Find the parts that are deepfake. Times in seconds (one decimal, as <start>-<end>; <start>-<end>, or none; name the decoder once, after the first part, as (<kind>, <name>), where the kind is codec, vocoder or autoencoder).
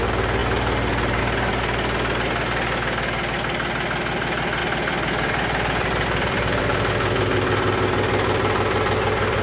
4.6-6.6 (vocoder, BigVGAN v2)